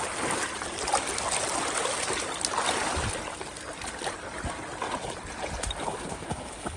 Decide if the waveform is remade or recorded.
recorded